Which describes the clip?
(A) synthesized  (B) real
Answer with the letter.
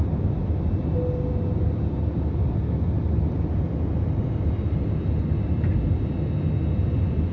B